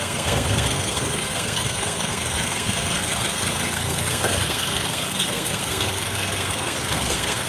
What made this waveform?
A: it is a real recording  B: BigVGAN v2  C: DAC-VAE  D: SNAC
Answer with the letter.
D